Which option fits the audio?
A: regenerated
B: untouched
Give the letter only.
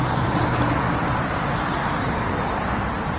B